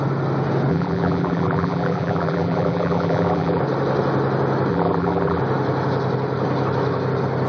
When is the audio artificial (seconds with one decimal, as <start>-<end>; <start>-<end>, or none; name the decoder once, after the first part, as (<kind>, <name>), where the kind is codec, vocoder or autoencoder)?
0.7-3.6 (vocoder, BigVGAN v2); 4.7-5.4